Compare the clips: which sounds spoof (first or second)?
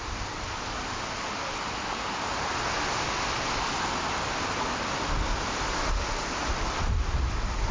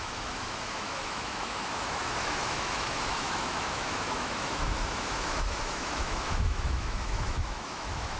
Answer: second